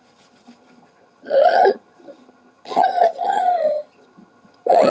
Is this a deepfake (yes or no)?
yes